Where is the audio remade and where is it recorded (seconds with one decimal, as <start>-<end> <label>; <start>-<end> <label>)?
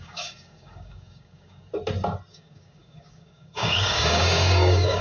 0.0-1.7 remade; 1.7-2.3 recorded; 2.3-5.0 remade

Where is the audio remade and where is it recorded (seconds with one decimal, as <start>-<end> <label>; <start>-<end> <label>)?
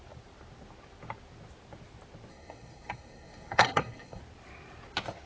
0.0-2.3 recorded; 2.3-4.2 remade; 4.2-5.3 recorded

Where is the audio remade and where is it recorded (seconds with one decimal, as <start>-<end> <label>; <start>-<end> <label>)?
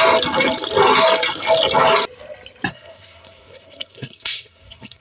0.0-2.7 recorded; 2.7-5.0 remade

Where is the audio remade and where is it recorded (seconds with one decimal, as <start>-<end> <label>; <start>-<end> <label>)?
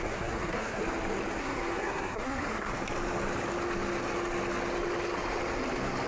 0.0-0.8 remade; 0.8-1.4 recorded; 1.4-2.7 remade; 2.7-6.1 recorded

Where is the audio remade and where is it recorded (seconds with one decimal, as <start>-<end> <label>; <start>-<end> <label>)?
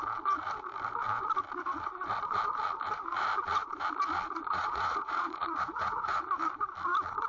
0.0-4.4 recorded; 4.4-6.3 remade; 6.3-7.3 recorded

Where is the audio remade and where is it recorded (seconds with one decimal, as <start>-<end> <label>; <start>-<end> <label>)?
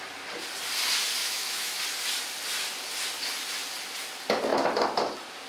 0.0-1.2 recorded; 1.2-1.8 remade; 1.8-5.5 recorded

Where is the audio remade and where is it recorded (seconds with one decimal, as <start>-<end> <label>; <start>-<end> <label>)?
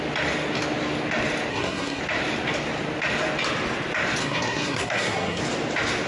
0.0-1.5 recorded; 1.5-2.0 remade; 2.0-4.2 recorded; 4.2-5.4 remade; 5.4-6.1 recorded